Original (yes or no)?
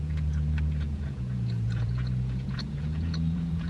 no